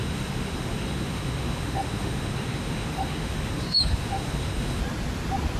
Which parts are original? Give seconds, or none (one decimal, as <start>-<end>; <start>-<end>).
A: 4.8-5.6